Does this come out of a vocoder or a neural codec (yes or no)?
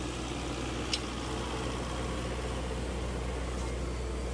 no